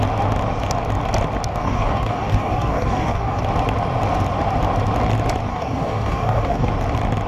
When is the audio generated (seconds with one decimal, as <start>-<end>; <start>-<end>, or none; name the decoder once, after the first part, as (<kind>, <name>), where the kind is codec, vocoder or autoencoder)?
1.5-3.4 (codec, DAC); 5.5-6.7